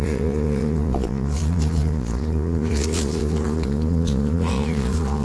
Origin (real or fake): fake